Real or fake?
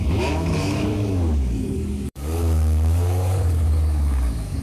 fake